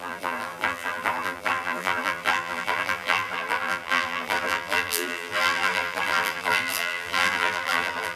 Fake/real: fake